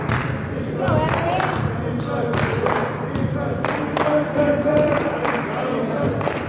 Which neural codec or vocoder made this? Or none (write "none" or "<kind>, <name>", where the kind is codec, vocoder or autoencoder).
none